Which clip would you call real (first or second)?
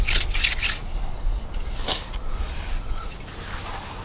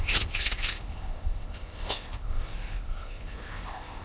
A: first